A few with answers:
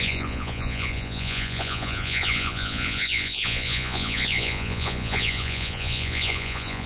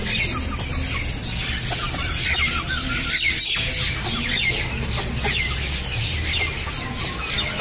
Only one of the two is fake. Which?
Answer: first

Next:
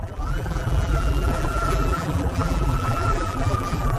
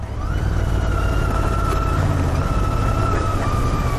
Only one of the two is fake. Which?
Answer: first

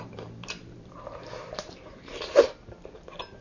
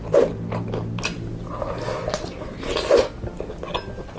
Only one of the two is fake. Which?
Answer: first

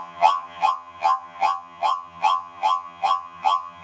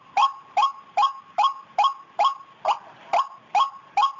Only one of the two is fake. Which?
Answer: first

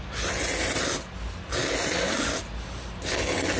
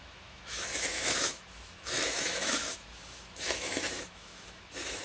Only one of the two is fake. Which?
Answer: second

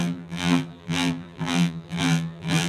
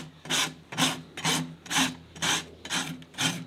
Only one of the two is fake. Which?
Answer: first